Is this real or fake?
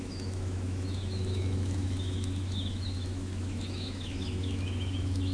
fake